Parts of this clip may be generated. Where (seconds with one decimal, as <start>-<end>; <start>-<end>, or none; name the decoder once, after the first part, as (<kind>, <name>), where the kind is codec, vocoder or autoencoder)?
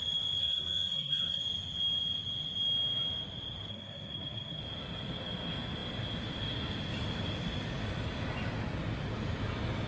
0.4-1.4 (codec, SNAC); 3.7-4.6